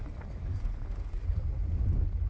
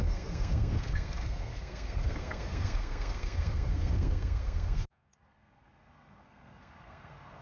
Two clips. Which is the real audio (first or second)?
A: first